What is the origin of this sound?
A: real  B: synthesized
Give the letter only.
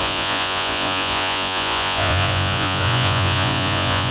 B